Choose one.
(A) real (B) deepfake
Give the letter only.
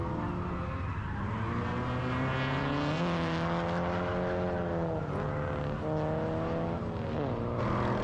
A